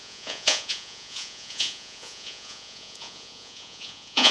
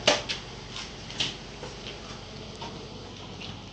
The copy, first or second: first